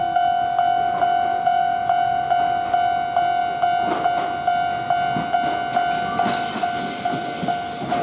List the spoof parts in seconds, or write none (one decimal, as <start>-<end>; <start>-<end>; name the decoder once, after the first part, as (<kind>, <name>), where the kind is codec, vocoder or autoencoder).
1.3-2.2 (vocoder, Vocos)